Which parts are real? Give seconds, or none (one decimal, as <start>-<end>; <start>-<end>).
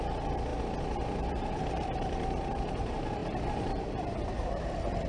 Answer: 0.5-1.1